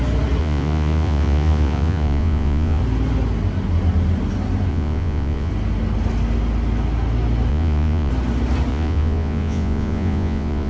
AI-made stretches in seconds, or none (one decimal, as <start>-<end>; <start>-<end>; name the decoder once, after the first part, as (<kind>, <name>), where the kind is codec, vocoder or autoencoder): 0.4-2.8 (vocoder, Vocos); 4.7-5.5; 7.5-8.1; 8.7-10.7